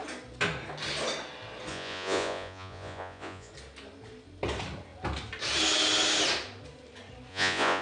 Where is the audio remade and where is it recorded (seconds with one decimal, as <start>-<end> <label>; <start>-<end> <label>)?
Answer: 0.0-1.7 recorded; 1.7-3.5 remade; 3.5-7.3 recorded; 7.3-7.8 remade